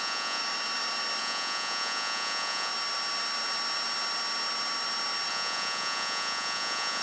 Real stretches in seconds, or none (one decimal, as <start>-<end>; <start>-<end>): 0.4-1.2; 2.7-5.3